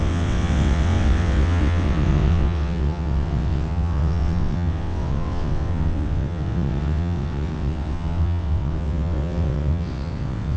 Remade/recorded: remade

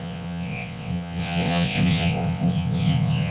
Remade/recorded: remade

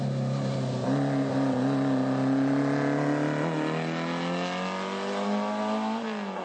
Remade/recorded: recorded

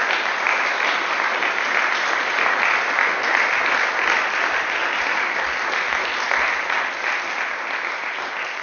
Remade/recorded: recorded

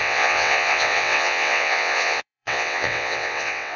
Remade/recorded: remade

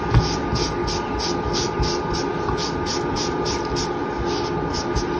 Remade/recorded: recorded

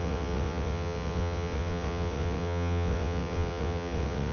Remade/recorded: remade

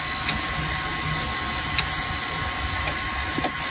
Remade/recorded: recorded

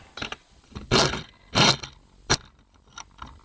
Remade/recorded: recorded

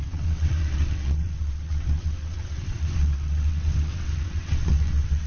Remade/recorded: remade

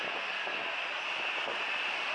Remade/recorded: recorded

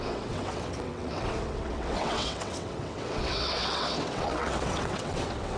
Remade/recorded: remade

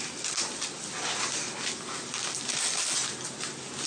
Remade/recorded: recorded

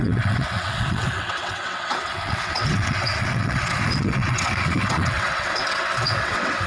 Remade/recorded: remade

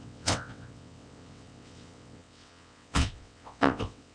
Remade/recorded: remade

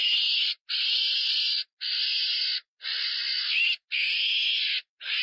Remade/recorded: recorded